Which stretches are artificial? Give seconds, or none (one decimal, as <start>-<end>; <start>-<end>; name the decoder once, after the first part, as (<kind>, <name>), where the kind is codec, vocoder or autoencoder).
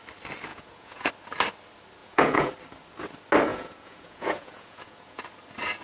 0.5-1.1 (vocoder, Vocos); 2.0-2.5; 3.5-5.2